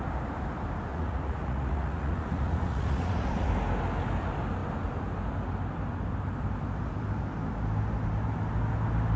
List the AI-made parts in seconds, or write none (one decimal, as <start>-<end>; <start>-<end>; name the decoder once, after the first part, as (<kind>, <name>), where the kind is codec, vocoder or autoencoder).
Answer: 0.9-3.5 (vocoder, Vocos)